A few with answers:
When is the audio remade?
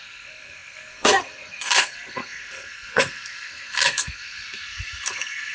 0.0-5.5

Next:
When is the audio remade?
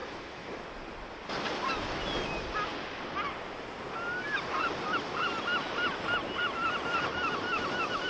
0.0-0.6